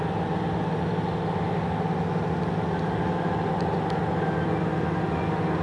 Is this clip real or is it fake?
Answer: real